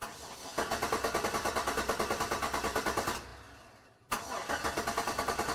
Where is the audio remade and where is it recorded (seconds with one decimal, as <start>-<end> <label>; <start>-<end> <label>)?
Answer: 0.0-5.5 recorded